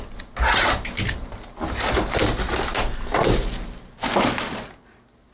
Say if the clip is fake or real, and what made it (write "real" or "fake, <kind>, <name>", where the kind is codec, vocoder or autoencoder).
real